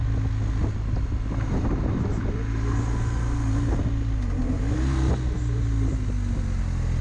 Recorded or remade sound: recorded